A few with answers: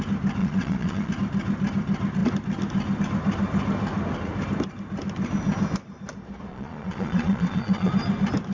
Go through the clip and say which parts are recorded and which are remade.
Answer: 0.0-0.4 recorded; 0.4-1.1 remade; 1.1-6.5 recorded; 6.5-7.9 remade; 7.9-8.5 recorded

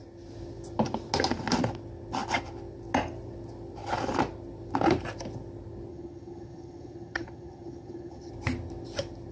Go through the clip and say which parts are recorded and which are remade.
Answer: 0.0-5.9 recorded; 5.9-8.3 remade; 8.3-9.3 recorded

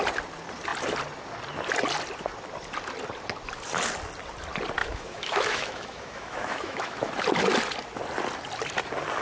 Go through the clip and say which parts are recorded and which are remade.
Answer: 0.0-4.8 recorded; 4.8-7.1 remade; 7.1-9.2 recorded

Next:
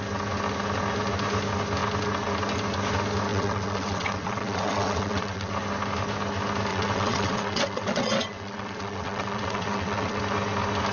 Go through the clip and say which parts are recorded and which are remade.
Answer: 0.0-3.3 recorded; 3.3-5.5 remade; 5.5-6.7 recorded; 6.7-10.2 remade; 10.2-10.9 recorded

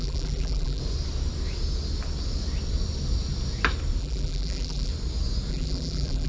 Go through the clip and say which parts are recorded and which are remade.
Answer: 0.0-0.8 remade; 0.8-4.0 recorded; 4.0-4.9 remade; 4.9-5.5 recorded; 5.5-6.3 remade

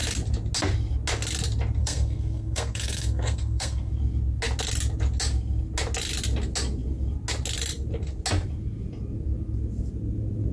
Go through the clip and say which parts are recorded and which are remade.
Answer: 0.0-1.8 recorded; 1.8-3.9 remade; 3.9-10.5 recorded

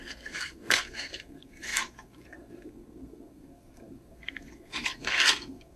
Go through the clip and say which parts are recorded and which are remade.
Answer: 0.0-5.8 remade

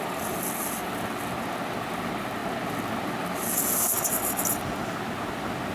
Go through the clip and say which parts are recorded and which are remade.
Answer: 0.0-5.7 recorded